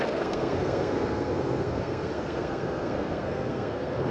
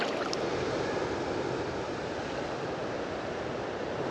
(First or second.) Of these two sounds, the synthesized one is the first